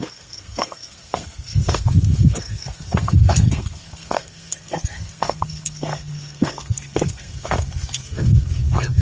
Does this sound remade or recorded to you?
remade